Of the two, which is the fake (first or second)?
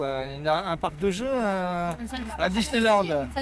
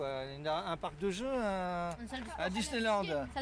first